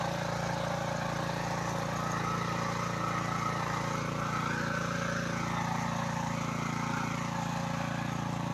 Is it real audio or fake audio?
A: real